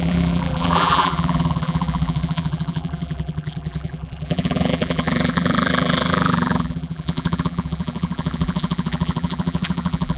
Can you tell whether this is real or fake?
fake